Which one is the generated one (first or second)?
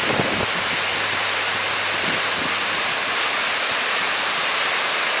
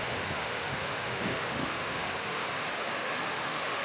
second